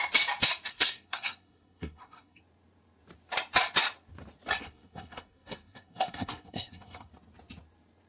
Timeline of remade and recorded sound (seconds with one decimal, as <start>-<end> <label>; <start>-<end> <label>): 0.0-0.7 recorded; 0.7-2.4 remade; 2.4-4.6 recorded; 4.6-7.1 remade; 7.1-8.1 recorded